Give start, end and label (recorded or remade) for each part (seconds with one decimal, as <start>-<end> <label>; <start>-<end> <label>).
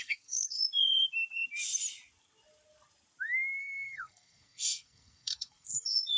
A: 0.0-0.6 remade; 0.6-3.6 recorded; 3.6-6.2 remade